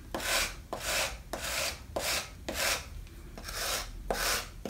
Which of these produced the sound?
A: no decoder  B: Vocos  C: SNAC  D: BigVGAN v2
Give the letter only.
A